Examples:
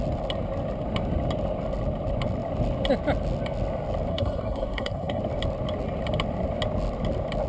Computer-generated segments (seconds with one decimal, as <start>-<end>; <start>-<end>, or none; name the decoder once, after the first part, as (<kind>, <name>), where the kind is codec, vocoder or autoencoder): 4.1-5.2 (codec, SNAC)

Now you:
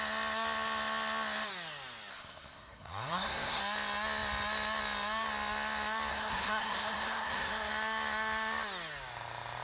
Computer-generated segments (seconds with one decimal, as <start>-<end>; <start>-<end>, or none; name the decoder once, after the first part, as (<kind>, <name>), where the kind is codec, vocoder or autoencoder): 2.1-3.6 (codec, SNAC); 6.1-7.7

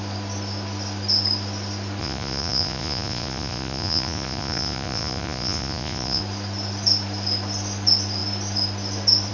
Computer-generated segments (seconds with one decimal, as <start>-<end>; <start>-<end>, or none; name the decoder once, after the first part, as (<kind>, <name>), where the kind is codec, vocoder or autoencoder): 2.0-6.2 (vocoder, Vocos)

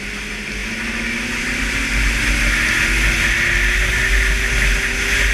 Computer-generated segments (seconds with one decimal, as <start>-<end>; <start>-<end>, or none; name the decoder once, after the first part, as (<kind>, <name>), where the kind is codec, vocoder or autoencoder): none

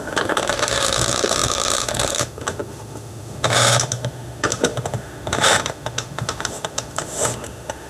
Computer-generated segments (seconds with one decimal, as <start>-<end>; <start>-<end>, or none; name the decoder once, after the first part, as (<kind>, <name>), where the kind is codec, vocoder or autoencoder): 0.0-7.9 (autoencoder, DAC-VAE)

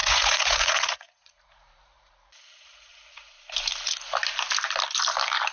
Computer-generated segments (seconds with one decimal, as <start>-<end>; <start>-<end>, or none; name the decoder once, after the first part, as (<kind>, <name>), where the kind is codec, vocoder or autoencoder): 0.0-3.3 (vocoder, Vocos)

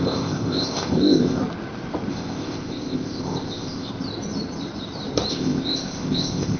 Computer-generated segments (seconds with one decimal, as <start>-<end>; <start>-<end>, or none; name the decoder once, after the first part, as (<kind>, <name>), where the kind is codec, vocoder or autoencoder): 0.0-1.4 (codec, ZipCodec); 2.1-3.9; 5.3-6.6